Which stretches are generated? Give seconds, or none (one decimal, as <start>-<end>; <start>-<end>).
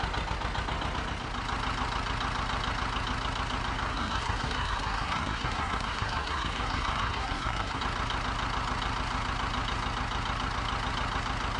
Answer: 3.9-7.8